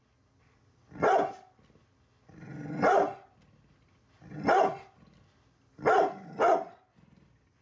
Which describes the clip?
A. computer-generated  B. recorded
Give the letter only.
B